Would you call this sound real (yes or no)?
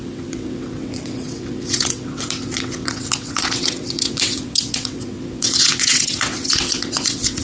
no